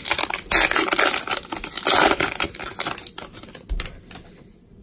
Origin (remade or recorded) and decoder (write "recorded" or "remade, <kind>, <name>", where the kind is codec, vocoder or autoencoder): recorded